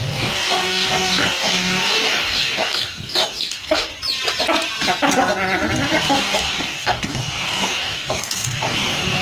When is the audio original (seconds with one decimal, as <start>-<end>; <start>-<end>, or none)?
3.9-6.1